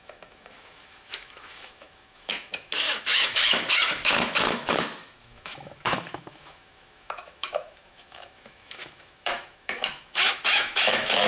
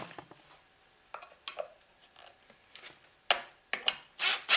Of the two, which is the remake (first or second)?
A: first